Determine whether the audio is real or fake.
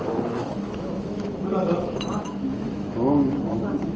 fake